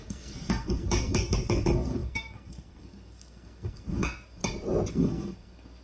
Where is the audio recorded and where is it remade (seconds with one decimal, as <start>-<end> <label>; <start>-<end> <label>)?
0.0-4.4 remade; 4.4-4.9 recorded; 4.9-5.8 remade